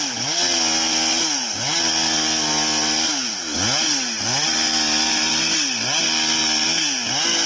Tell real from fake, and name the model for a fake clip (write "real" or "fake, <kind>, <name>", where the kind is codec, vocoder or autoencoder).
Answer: real